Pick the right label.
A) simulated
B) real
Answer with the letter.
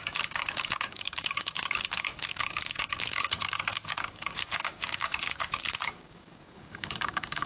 A